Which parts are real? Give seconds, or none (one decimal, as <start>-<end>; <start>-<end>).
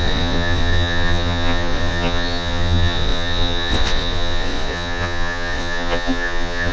none